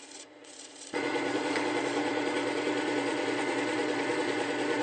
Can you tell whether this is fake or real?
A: fake